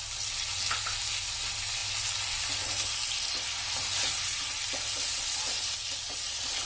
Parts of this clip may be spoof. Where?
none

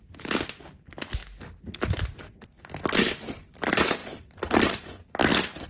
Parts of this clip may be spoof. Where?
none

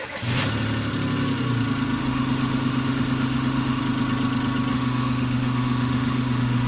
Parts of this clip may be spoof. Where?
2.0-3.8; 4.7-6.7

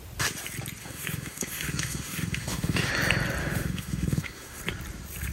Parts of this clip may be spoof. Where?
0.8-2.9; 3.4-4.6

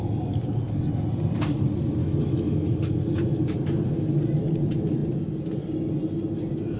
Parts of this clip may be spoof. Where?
2.0-2.8

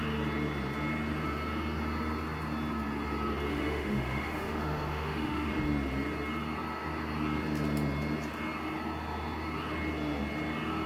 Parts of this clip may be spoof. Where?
3.5-5.5